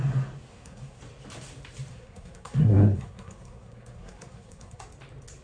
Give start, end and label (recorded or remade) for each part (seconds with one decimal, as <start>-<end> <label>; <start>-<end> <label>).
0.0-0.5 recorded; 0.5-1.0 remade; 1.0-1.9 recorded; 1.9-4.8 remade; 4.8-5.4 recorded